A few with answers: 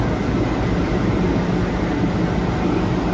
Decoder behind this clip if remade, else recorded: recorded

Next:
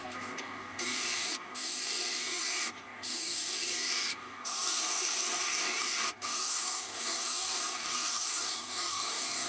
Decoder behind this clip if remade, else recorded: remade, codec, DAC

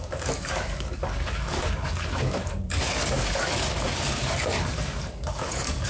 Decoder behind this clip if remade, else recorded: remade, codec, DAC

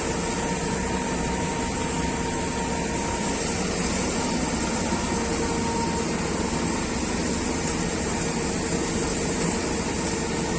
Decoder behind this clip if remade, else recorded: recorded